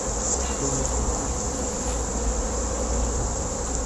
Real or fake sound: real